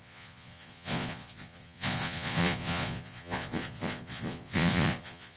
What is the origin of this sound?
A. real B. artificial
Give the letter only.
B